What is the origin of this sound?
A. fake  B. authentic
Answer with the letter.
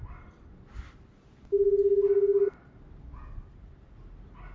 B